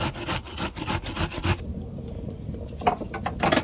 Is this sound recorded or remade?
recorded